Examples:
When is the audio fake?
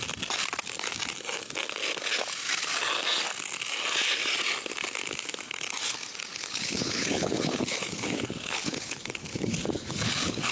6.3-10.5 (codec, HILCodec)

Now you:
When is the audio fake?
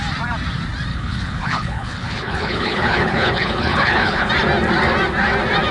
0.9-4.3 (codec, HILCodec)